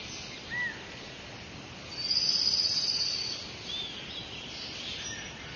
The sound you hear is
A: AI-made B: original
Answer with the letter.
B